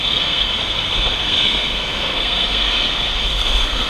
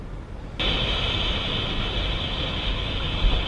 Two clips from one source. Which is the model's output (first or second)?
first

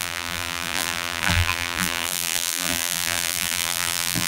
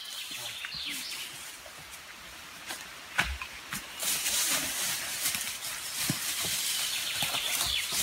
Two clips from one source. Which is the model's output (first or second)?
first